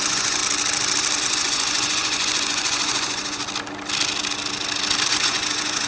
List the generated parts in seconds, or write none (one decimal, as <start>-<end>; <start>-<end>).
0.0-0.4; 1.2-3.4; 5.1-5.9